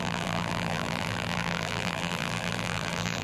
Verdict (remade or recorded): remade